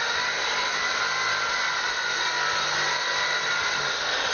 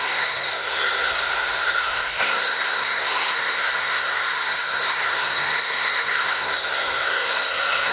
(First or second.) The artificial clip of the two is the second